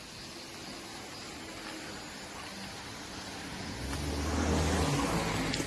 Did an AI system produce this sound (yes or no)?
no